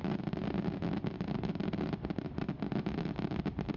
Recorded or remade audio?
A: recorded